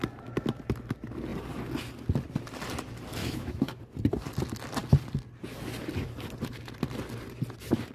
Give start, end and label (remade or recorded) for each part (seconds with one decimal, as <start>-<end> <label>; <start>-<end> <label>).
0.0-3.2 recorded; 3.2-3.8 remade; 3.8-7.9 recorded